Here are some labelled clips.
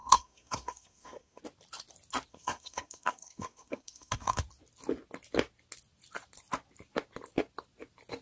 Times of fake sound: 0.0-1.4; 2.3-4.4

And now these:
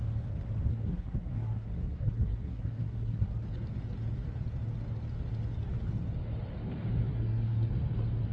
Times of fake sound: 0.7-3.3; 7.1-7.7